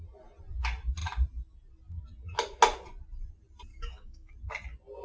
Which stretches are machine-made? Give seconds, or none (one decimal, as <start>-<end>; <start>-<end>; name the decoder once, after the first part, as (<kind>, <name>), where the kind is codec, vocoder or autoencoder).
3.7-4.3 (autoencoder, DAC-VAE)